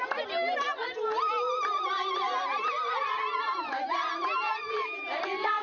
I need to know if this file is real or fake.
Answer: real